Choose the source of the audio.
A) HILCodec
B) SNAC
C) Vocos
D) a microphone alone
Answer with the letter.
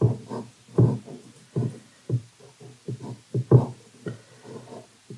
D